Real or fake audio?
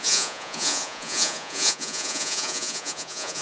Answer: fake